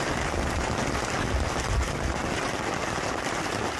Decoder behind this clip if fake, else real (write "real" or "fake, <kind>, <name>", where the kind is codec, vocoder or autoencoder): real